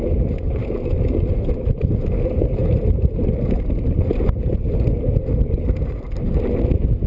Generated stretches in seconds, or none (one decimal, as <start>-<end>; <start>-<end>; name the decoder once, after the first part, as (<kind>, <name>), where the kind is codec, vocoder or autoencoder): 0.0-0.6 (vocoder, BigVGAN v2); 1.3-7.1